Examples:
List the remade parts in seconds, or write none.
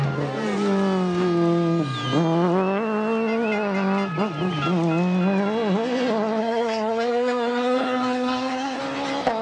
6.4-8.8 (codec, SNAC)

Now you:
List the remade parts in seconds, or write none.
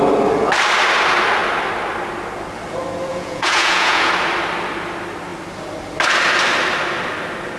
3.1-4.1 (vocoder, Vocos)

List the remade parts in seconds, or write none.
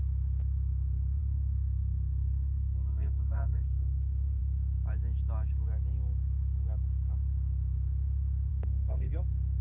1.2-4.4 (codec, SNAC); 8.5-9.1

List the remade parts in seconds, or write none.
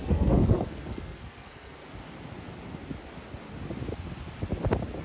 0.0-1.8 (codec, SNAC)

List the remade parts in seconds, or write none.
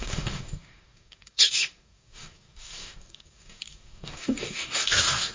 0.0-5.3 (codec, DAC)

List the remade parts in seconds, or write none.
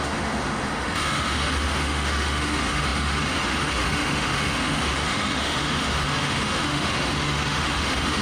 0.0-8.2 (autoencoder, DAC-VAE)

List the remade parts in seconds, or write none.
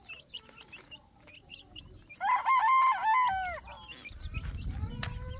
none